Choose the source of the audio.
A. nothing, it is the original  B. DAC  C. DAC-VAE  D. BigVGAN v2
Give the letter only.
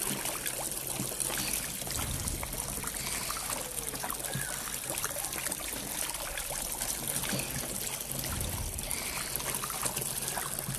A